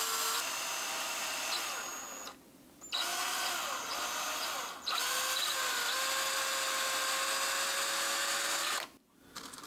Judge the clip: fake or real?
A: real